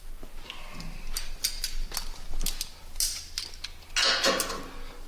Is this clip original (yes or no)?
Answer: yes